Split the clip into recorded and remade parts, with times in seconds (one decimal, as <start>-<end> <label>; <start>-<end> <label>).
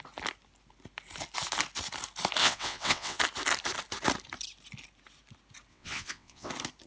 0.0-2.4 recorded; 2.4-3.2 remade; 3.2-5.7 recorded; 5.7-6.5 remade; 6.5-6.9 recorded